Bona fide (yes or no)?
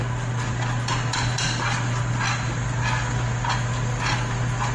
yes